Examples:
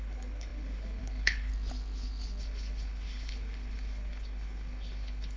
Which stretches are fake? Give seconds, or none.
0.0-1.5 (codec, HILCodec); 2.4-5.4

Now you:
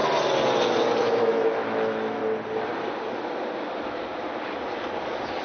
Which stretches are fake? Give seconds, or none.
1.0-2.2 (autoencoder, DAC-VAE)

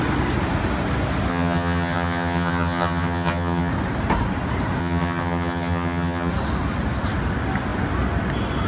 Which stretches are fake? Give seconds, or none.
1.3-3.7 (vocoder, HiFi-GAN); 4.8-6.3